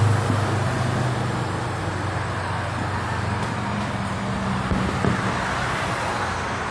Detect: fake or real real